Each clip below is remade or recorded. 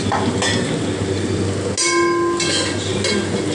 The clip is recorded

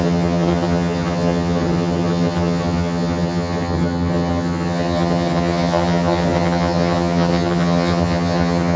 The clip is remade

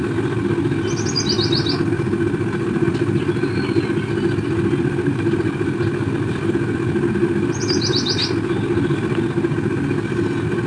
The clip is recorded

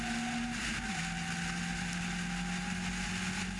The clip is recorded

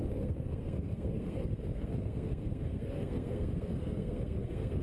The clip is remade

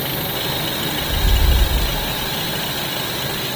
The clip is recorded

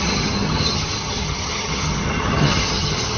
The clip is remade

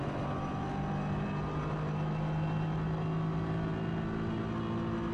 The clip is recorded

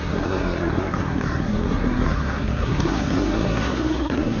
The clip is remade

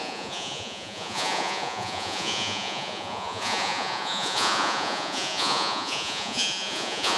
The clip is remade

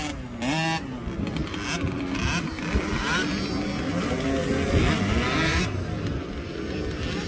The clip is recorded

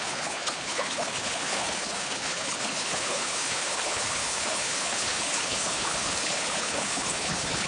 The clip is remade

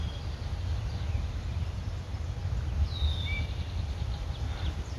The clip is recorded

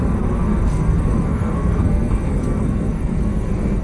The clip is remade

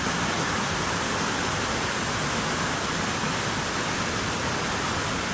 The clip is recorded